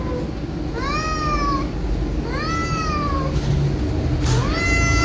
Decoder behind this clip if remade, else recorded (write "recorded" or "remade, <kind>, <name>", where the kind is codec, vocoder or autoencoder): recorded